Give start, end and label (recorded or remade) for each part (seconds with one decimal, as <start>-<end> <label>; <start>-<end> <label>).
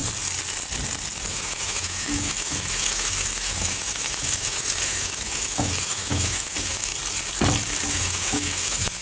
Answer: 0.0-1.3 recorded; 1.3-6.9 remade; 6.9-7.9 recorded; 7.9-9.0 remade